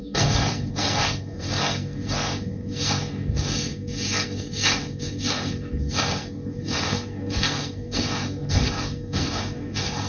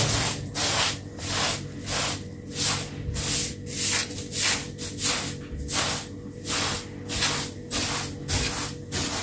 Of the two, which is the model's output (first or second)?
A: first